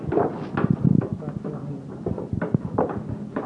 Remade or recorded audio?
recorded